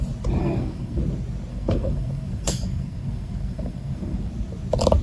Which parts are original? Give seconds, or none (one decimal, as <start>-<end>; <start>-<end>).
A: 0.0-0.4; 1.0-1.5; 4.3-5.0